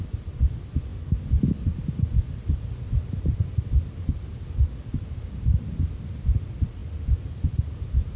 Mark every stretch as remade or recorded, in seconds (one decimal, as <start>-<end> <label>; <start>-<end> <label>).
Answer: 0.0-8.2 recorded